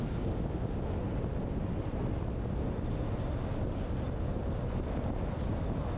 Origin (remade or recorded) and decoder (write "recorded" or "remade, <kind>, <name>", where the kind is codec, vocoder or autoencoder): recorded